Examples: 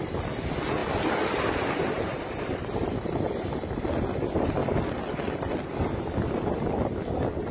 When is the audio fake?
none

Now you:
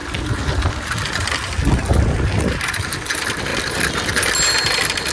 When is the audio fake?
none

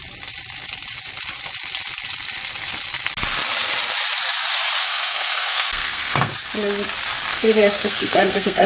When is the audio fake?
4.8-6.3 (codec, SNAC); 7.3-8.7

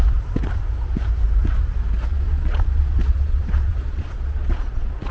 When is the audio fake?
2.1-5.1 (vocoder, Vocos)

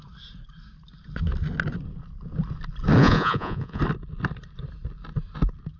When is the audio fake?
3.0-3.8 (vocoder, Vocos)

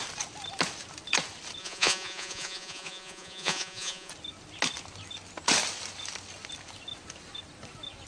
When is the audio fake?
1.6-4.1 (vocoder, Vocos)